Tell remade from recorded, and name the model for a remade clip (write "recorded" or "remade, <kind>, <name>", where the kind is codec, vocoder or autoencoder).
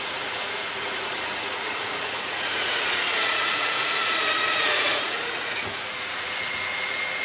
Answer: remade, vocoder, Vocos